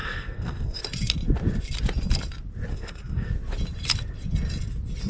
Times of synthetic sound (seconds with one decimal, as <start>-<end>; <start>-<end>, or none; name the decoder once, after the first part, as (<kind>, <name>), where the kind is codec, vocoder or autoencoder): 0.0-0.8 (codec, SNAC); 2.7-3.3